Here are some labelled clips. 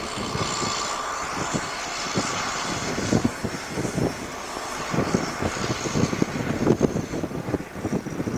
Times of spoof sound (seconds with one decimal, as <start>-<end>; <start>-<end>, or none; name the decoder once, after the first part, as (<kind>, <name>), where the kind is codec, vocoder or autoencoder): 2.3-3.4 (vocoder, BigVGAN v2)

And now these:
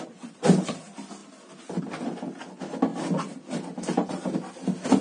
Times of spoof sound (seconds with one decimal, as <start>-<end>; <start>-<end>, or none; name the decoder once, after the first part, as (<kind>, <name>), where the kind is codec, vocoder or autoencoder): none

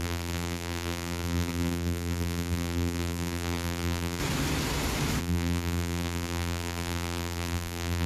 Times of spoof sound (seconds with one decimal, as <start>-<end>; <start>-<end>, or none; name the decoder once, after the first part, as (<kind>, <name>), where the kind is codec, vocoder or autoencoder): 0.0-4.2 (vocoder, BigVGAN v2); 5.2-8.1

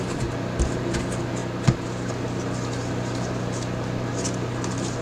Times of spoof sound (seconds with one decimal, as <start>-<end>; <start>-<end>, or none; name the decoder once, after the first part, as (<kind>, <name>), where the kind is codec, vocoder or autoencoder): 0.0-1.4 (vocoder, BigVGAN v2); 2.1-5.0

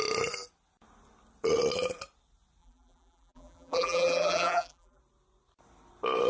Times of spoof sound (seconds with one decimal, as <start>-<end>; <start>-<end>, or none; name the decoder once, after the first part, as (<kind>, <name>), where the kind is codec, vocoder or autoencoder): 2.6-5.0 (vocoder, BigVGAN v2)